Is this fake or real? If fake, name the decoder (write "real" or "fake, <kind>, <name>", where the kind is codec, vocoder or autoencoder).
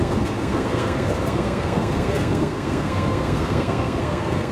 fake, codec, SNAC